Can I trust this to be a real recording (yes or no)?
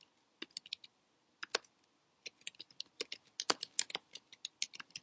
yes